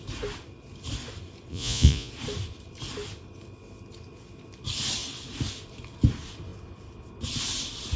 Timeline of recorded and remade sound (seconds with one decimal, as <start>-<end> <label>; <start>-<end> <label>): 0.0-1.5 recorded; 1.5-2.1 remade; 2.1-8.0 recorded